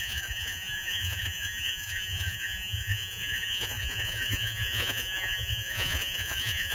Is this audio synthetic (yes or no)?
yes